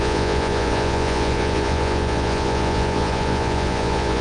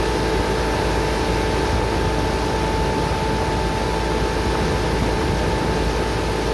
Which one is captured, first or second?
second